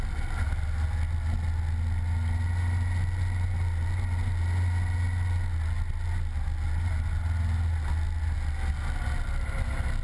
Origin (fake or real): real